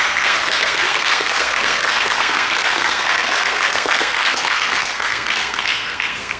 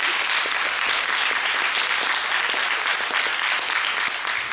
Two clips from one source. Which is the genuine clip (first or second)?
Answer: second